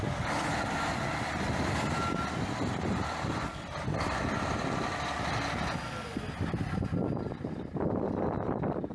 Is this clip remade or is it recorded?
recorded